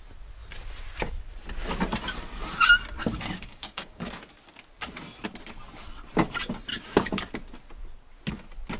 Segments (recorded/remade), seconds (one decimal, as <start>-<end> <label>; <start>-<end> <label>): 0.0-3.0 recorded; 3.0-4.1 remade; 4.1-6.7 recorded; 6.7-7.2 remade; 7.2-8.8 recorded